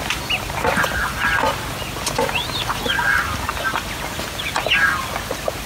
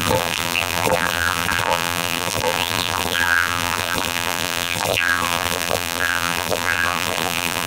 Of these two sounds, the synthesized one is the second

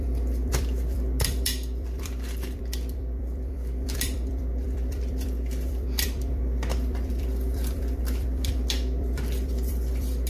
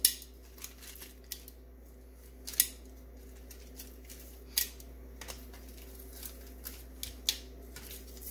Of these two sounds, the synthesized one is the first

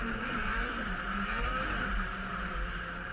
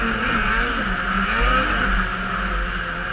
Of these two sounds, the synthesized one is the first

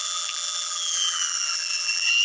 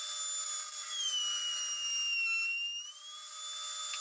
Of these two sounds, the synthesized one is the first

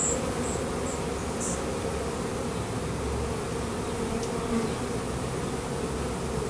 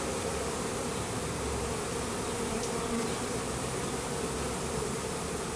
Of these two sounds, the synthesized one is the second